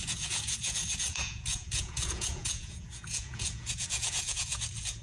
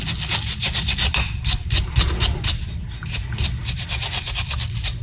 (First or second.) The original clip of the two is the second